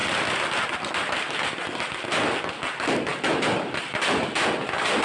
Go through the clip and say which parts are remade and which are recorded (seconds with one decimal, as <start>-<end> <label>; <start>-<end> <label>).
0.0-5.0 recorded